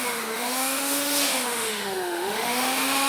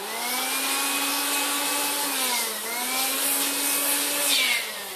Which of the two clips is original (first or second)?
second